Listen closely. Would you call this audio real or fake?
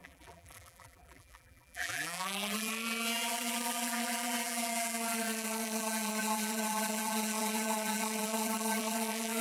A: fake